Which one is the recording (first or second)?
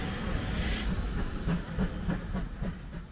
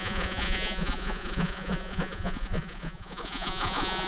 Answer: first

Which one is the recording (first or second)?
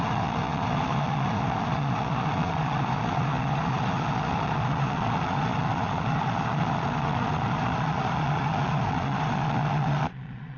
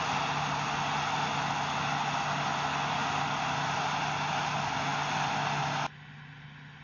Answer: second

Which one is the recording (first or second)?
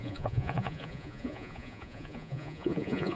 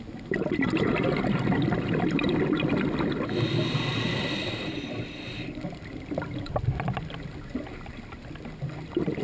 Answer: second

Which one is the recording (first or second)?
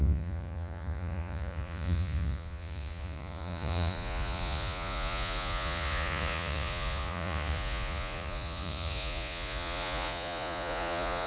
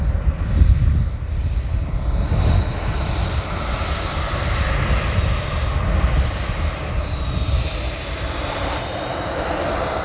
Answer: second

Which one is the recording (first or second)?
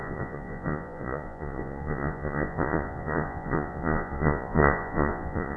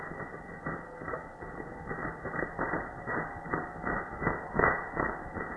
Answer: second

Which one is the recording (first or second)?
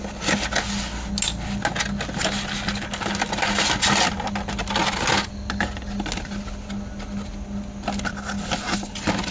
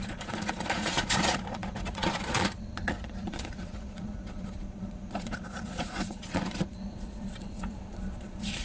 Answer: first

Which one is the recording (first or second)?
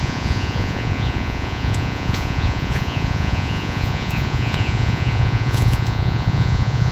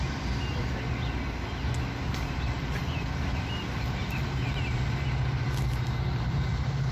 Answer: second